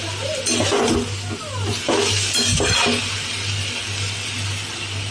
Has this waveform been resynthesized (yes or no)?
no